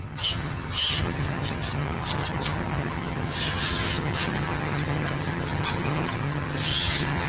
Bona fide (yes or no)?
no